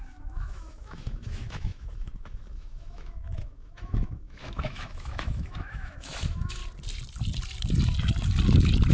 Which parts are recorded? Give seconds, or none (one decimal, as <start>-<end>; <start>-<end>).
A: 6.6-8.9